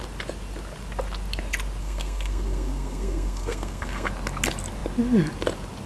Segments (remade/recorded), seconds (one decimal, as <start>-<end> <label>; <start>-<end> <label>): 0.0-1.8 recorded; 1.8-4.1 remade; 4.1-5.9 recorded